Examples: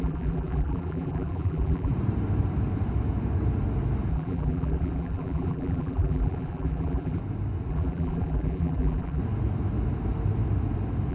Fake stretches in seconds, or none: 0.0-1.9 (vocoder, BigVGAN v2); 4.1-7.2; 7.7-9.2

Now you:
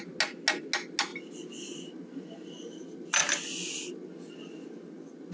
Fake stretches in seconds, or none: none

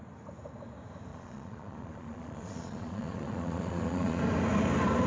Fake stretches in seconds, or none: 1.1-4.2 (vocoder, Vocos)

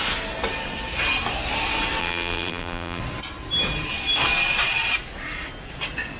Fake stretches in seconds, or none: 2.0-3.0 (vocoder, BigVGAN v2)

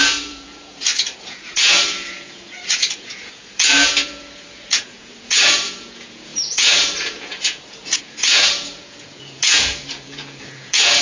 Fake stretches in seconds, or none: 0.0-11.0 (vocoder, Vocos)

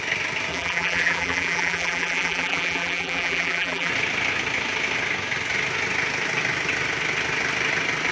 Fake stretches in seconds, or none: 0.5-3.9 (vocoder, BigVGAN v2)